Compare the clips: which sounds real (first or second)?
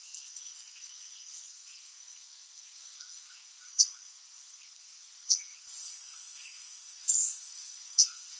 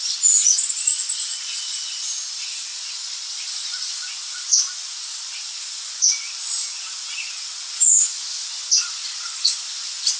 second